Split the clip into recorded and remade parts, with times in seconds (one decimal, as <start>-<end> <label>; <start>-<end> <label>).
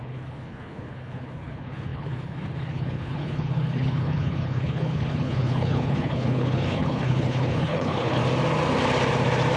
0.0-8.2 remade; 8.2-9.6 recorded